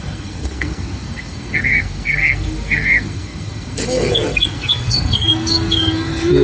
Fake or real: fake